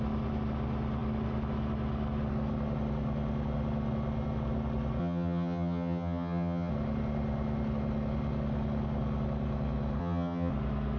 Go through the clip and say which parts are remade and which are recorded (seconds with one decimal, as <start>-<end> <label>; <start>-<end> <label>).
0.0-5.0 recorded; 5.0-6.7 remade; 6.7-10.0 recorded; 10.0-10.5 remade; 10.5-11.0 recorded